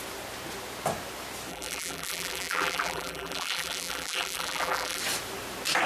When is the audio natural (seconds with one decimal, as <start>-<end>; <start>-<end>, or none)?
0.0-1.5; 5.0-5.9

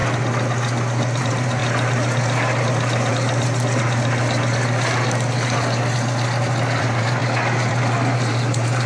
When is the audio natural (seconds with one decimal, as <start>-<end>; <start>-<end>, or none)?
0.0-1.2; 1.6-6.8; 7.2-7.7

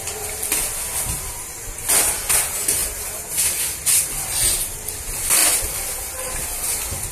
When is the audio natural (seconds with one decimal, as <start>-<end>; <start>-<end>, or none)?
0.0-7.1

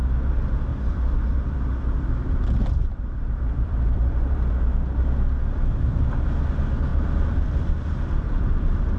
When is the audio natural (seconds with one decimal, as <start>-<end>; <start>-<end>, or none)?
0.0-0.7; 4.9-6.9